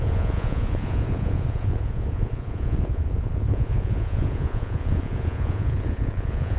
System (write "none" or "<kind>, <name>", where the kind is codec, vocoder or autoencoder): vocoder, Vocos